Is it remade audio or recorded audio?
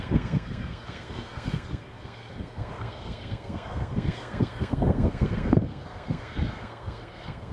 remade